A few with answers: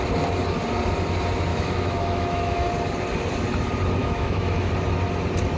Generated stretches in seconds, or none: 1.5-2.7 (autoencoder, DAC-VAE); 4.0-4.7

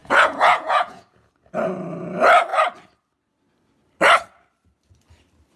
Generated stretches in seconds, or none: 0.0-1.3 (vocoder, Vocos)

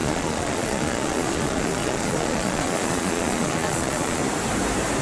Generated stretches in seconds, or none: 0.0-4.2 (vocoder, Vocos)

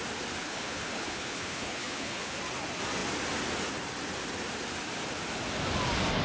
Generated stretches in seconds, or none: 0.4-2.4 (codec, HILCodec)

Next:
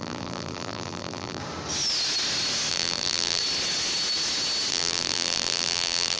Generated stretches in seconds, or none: 0.0-1.4 (vocoder, BigVGAN v2); 2.7-3.4; 4.7-6.2

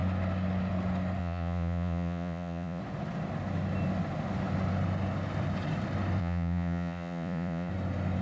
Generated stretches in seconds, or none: 1.2-2.8 (vocoder, Vocos); 6.2-7.7

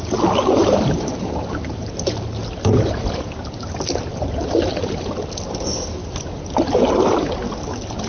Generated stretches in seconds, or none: 0.6-1.9 (vocoder, BigVGAN v2)

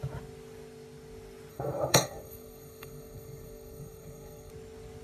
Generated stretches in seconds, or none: 1.5-4.5 (codec, SNAC)